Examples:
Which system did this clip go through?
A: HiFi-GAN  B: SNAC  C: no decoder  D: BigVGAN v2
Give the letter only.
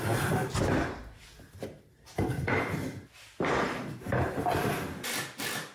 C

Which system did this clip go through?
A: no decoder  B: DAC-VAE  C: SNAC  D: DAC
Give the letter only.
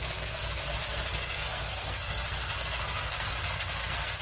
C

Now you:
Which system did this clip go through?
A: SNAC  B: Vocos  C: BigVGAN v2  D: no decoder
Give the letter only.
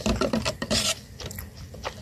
D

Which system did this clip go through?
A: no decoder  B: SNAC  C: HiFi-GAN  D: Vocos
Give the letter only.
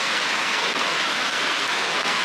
B